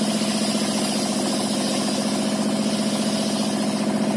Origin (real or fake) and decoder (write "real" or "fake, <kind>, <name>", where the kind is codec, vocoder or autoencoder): real